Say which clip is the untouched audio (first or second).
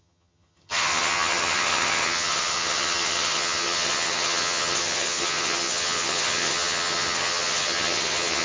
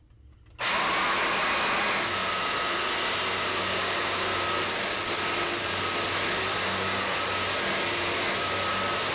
second